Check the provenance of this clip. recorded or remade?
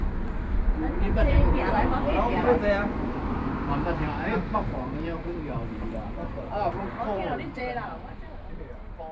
remade